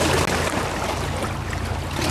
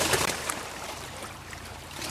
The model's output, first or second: second